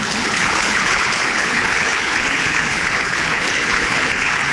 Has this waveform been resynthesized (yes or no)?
yes